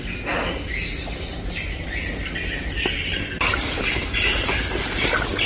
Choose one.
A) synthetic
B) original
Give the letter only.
B